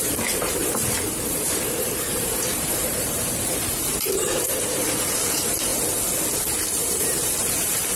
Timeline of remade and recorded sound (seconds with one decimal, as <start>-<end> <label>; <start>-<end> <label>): 0.0-5.7 remade; 5.7-6.8 recorded; 6.8-8.0 remade